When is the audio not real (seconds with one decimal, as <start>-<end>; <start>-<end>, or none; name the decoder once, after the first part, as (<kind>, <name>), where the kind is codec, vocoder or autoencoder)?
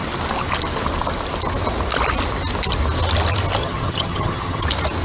3.6-4.6 (vocoder, HiFi-GAN)